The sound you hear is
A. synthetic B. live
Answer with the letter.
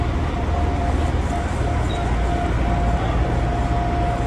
B